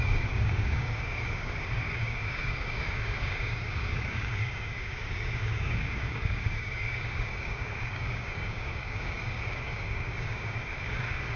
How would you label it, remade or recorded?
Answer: remade